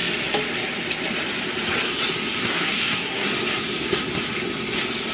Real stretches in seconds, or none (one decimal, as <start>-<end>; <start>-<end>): 0.0-2.4; 3.3-5.1

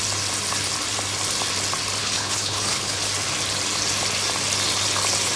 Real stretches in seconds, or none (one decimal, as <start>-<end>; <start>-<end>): 0.0-2.0; 3.0-5.4

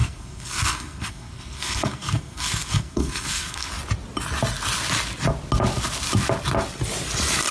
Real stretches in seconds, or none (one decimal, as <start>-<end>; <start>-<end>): 3.7-7.5